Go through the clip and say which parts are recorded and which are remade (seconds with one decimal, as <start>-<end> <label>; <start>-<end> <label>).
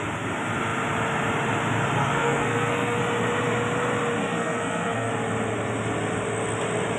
0.0-2.0 recorded; 2.0-3.0 remade; 3.0-4.2 recorded; 4.2-5.1 remade; 5.1-7.0 recorded